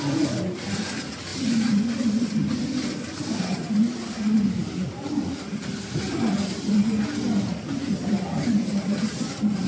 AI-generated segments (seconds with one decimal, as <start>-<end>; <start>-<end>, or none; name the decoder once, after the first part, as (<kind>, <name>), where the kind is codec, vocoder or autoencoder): 0.0-6.8 (vocoder, BigVGAN v2); 7.7-9.7